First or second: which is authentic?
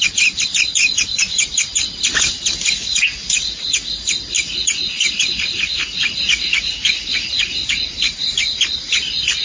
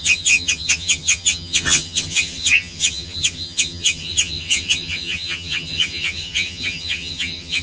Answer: first